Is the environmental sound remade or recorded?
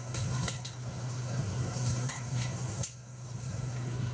remade